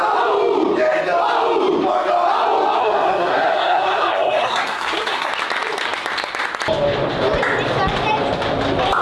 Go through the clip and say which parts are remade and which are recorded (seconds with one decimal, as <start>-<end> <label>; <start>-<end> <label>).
0.0-2.8 recorded; 2.8-5.3 remade; 5.3-9.0 recorded